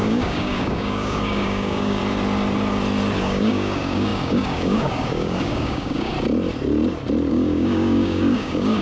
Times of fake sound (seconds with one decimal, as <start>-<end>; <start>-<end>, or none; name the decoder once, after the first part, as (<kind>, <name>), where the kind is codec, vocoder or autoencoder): 0.0-2.0 (codec, DAC); 3.2-6.1; 7.3-8.8